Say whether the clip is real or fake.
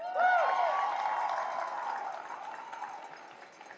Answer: real